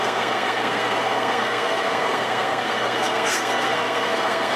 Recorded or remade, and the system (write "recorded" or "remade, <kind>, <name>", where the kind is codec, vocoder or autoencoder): remade, codec, SNAC